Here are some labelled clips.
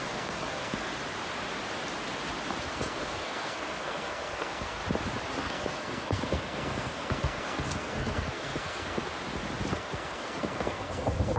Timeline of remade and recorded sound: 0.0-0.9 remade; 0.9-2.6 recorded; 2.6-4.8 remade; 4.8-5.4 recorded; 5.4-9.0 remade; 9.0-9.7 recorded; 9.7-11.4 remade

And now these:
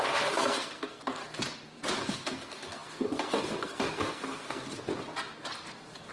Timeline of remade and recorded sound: 0.0-1.2 remade; 1.2-2.0 recorded; 2.0-4.9 remade; 4.9-6.1 recorded

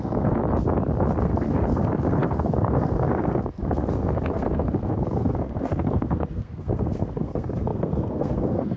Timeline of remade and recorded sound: 0.0-0.4 remade; 0.4-1.2 recorded; 1.2-8.8 remade

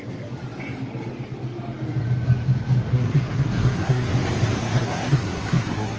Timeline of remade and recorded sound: 0.0-2.9 recorded; 2.9-4.1 remade; 4.1-4.6 recorded; 4.6-6.0 remade